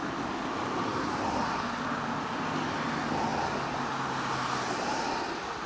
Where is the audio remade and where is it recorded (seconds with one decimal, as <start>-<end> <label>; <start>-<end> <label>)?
0.0-5.7 recorded